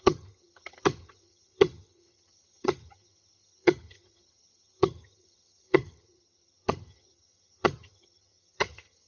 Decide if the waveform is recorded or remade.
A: remade